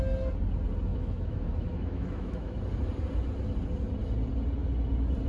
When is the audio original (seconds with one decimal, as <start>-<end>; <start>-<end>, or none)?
0.0-0.9; 2.6-5.3